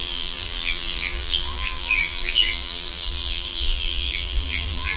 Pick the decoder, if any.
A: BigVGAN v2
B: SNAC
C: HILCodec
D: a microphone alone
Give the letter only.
A